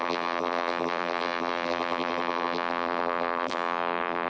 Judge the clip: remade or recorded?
remade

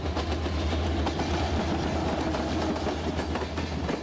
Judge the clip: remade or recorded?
recorded